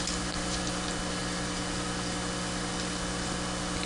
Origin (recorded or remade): recorded